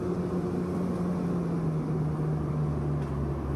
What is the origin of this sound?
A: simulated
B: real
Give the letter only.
B